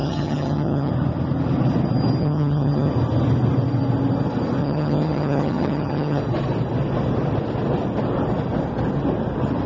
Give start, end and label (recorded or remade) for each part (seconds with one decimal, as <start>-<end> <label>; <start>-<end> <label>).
0.0-0.9 remade; 0.9-2.2 recorded; 2.2-2.9 remade; 2.9-4.6 recorded; 4.6-6.2 remade; 6.2-9.7 recorded